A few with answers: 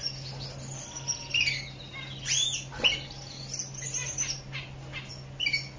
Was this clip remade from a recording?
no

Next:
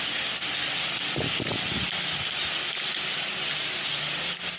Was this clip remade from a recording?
no